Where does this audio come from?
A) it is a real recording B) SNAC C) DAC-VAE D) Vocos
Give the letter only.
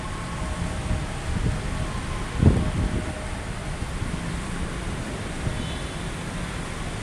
A